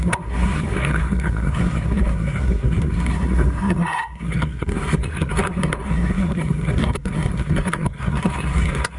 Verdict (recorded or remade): remade